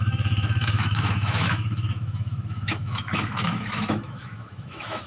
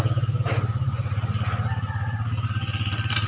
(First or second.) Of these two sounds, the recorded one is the second